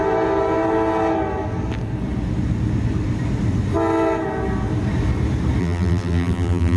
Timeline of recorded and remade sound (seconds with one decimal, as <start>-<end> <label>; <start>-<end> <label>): 0.0-5.6 recorded; 5.6-6.8 remade